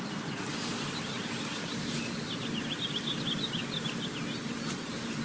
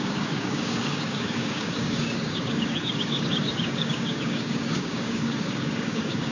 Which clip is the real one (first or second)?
first